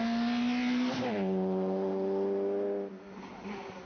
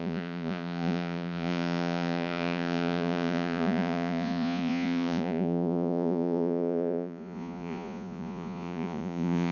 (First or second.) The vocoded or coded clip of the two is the second